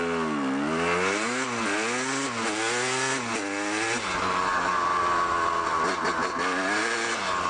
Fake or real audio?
real